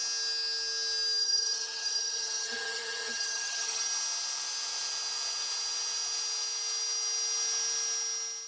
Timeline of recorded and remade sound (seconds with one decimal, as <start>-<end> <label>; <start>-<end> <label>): 0.0-1.2 recorded; 1.2-3.8 remade; 3.8-8.5 recorded